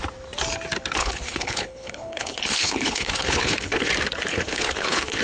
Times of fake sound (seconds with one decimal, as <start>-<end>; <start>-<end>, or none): 1.0-3.9; 4.3-5.2